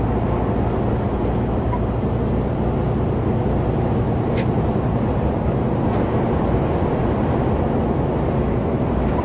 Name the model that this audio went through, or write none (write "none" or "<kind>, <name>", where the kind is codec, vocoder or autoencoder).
none